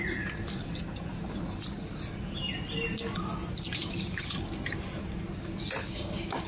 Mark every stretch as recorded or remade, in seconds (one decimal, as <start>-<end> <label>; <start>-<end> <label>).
0.0-5.8 recorded; 5.8-6.5 remade

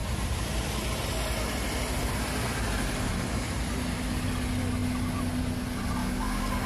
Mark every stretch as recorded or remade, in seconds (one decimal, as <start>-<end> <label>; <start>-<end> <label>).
0.0-6.0 recorded; 6.0-6.7 remade

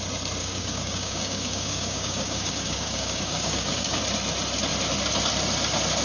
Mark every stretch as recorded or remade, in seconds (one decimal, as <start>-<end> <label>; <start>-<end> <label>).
0.0-0.4 recorded; 0.4-4.0 remade; 4.0-6.0 recorded

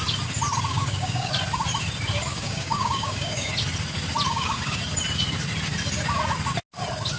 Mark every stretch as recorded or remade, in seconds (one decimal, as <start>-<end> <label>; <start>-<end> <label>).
0.0-0.7 recorded; 0.7-1.3 remade; 1.3-2.3 recorded; 2.3-3.5 remade; 3.5-4.3 recorded; 4.3-4.8 remade; 4.8-7.2 recorded

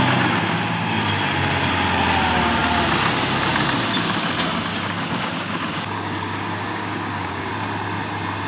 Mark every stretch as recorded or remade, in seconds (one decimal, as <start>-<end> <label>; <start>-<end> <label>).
0.0-4.7 recorded; 4.7-7.5 remade; 7.5-8.5 recorded

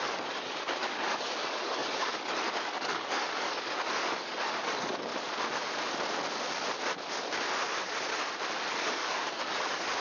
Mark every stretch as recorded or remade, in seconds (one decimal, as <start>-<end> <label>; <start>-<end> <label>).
0.0-5.1 remade; 5.1-8.8 recorded; 8.8-10.0 remade

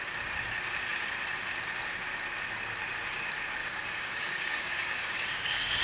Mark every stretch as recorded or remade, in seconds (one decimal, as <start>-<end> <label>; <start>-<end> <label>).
0.0-3.6 recorded; 3.6-5.8 remade